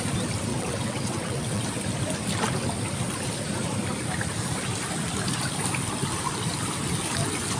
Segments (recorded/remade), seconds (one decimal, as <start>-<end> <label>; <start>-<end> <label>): 0.0-0.5 recorded; 0.5-1.6 remade; 1.6-7.6 recorded